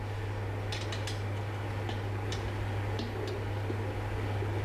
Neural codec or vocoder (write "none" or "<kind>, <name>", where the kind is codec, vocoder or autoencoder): none